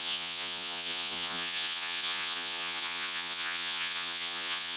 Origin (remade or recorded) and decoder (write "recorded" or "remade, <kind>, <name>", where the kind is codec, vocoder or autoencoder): remade, vocoder, Vocos